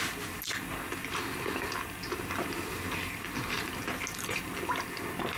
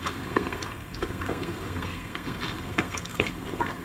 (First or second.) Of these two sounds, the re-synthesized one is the second